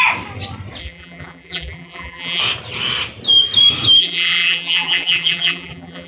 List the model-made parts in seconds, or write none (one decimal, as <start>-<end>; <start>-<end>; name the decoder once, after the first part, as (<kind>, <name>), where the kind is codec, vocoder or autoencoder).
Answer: 0.8-2.4 (vocoder, BigVGAN v2); 4.0-6.1